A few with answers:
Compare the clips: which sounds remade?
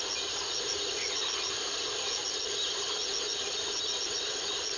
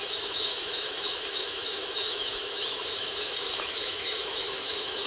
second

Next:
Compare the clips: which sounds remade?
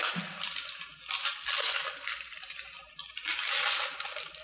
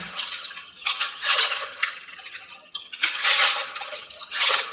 second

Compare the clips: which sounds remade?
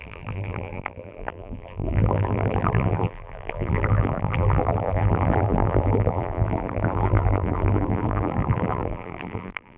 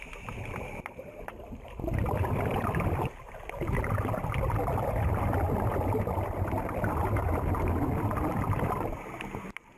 first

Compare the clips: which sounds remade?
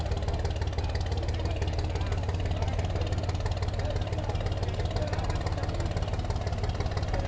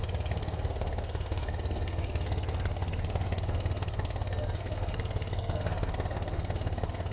second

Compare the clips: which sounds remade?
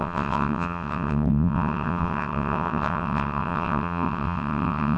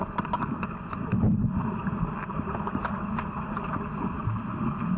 first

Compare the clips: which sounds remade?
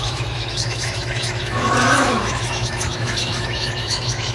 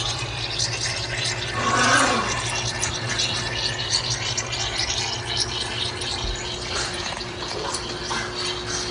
first